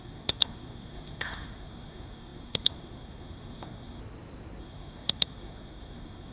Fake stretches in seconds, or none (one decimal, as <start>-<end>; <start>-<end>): 0.0-4.0; 4.6-6.3

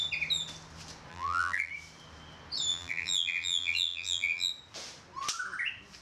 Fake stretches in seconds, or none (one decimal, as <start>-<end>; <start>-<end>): 1.1-1.7; 2.7-4.5

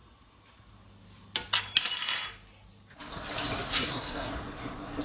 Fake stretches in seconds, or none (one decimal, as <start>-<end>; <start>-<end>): 3.7-4.3

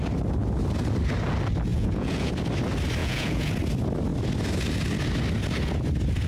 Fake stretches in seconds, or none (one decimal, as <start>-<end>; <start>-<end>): 1.7-2.3; 3.0-3.5